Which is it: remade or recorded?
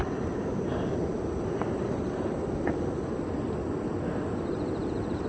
recorded